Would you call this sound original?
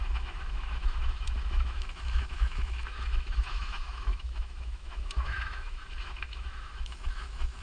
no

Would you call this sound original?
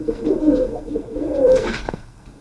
no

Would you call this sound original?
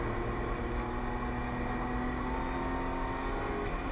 yes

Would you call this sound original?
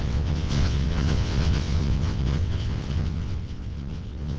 no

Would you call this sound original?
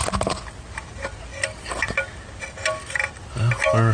yes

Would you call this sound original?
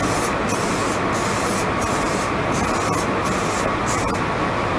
yes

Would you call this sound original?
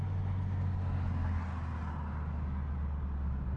yes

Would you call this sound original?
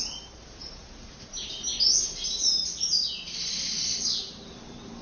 no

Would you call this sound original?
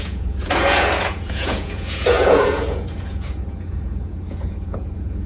no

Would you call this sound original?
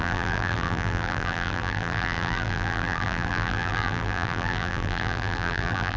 no